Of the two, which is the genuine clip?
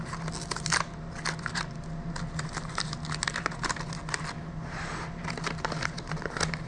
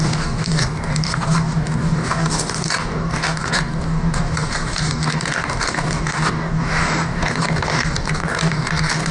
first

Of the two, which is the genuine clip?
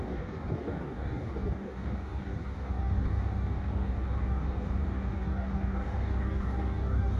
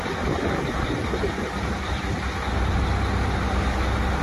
second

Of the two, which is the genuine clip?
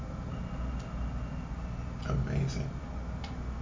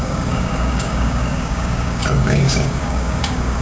first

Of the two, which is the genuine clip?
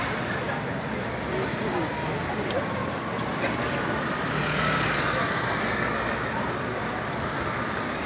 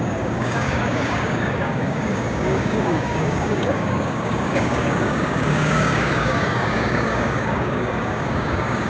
first